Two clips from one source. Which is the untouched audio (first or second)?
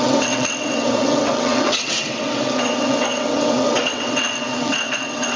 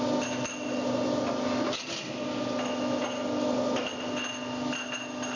second